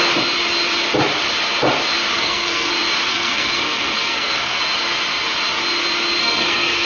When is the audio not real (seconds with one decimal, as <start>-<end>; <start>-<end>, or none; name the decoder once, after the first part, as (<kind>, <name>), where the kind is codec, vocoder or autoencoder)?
2.1-2.7 (codec, SNAC); 3.1-4.6; 6.2-6.9